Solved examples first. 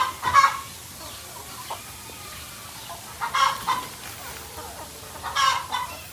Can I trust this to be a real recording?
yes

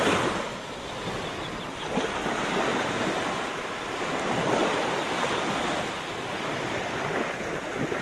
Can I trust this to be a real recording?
yes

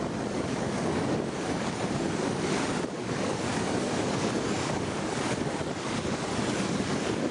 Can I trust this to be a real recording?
no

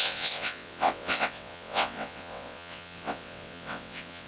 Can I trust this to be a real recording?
no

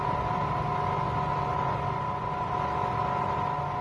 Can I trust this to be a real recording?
yes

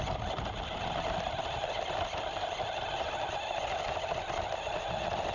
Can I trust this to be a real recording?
yes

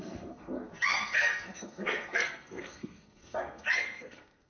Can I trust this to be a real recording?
no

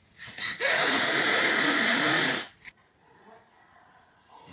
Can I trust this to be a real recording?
no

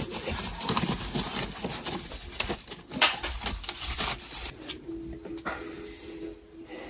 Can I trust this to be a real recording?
yes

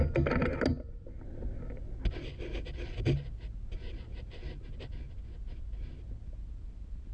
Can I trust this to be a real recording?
yes